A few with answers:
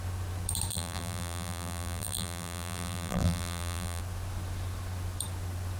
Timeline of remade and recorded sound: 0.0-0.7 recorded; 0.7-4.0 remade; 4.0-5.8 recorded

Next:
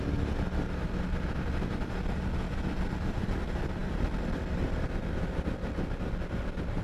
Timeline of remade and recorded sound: 0.0-6.8 recorded

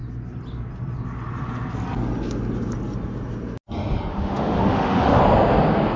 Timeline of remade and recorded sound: 0.0-4.1 recorded; 4.1-5.2 remade; 5.2-6.0 recorded